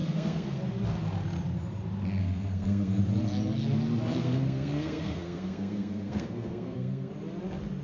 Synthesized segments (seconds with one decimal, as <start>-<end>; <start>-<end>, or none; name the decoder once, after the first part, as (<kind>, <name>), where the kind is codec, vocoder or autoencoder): 0.0-0.7 (codec, SNAC); 2.2-3.0; 4.2-7.1